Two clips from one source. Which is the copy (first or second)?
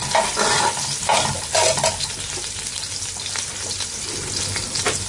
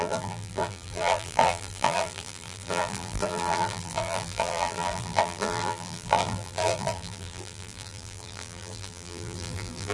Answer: second